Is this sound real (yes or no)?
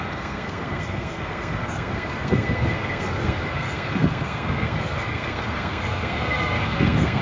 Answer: no